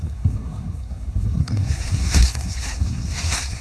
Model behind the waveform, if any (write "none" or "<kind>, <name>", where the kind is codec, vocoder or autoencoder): codec, SNAC